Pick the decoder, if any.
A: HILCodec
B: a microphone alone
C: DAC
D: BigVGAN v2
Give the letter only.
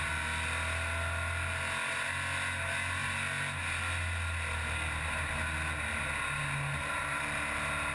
B